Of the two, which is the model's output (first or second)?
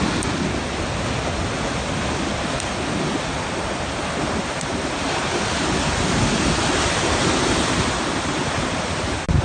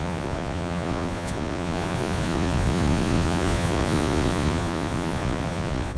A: second